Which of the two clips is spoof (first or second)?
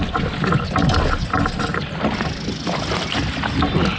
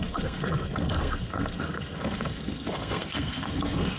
second